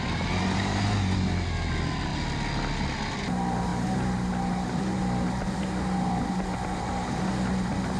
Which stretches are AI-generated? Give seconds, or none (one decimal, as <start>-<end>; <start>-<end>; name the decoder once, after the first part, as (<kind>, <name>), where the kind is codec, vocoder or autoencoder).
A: none